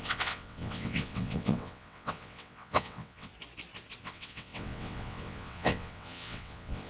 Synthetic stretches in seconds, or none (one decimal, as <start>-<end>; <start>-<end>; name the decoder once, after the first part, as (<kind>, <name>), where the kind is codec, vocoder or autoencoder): 0.0-3.3 (vocoder, WaveNeXt); 4.0-6.9